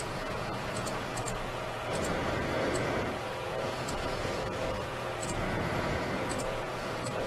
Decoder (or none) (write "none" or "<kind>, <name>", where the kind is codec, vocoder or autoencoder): vocoder, Vocos